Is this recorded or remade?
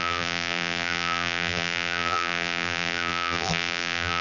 remade